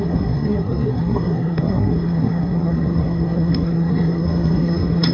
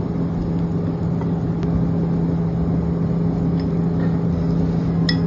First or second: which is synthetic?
first